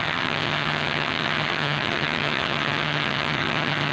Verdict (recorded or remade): remade